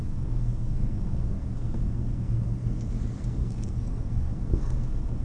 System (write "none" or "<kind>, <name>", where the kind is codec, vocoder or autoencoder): codec, SNAC